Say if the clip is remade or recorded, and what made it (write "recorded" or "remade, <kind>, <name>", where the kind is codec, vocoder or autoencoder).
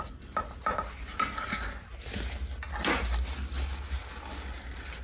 recorded